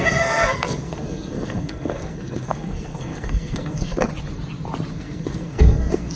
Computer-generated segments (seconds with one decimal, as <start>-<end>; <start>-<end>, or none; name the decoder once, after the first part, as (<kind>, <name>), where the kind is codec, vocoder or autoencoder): 0.0-4.1 (codec, SNAC); 4.9-6.2